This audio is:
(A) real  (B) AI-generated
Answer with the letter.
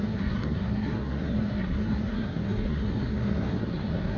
B